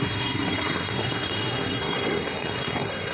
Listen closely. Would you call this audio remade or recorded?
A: remade